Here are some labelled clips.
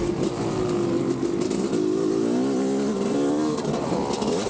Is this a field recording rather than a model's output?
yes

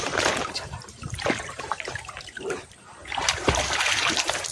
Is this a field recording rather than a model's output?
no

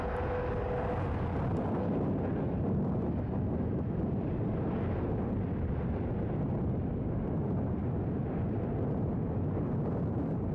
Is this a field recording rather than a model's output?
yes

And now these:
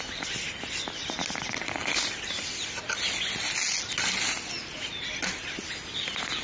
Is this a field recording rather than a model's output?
yes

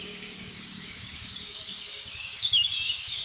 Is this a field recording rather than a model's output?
no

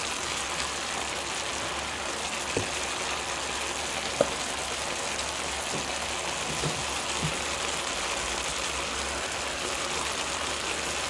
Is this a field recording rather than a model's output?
yes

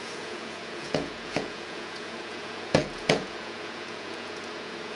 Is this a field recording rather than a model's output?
no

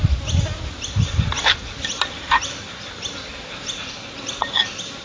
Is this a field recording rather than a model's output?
yes